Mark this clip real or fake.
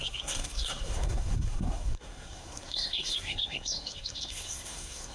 fake